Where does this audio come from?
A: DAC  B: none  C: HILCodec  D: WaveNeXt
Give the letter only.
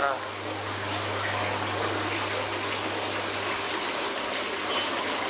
B